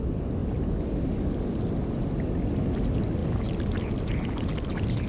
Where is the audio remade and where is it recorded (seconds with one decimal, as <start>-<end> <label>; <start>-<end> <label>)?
0.0-5.1 recorded